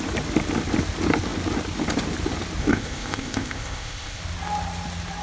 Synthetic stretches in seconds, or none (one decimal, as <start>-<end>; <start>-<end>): 2.6-4.2